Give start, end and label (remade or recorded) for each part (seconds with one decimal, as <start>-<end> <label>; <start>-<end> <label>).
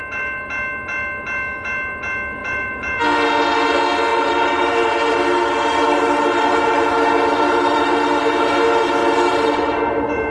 0.0-2.4 recorded; 2.4-3.0 remade; 3.0-4.1 recorded; 4.1-8.5 remade; 8.5-9.0 recorded; 9.0-10.3 remade